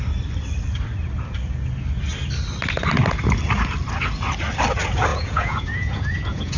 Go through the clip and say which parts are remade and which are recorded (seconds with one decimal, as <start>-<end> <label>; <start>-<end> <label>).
0.0-5.1 recorded; 5.1-6.6 remade